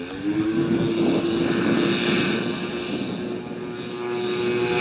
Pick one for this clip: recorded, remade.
recorded